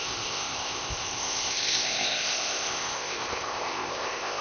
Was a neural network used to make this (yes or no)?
yes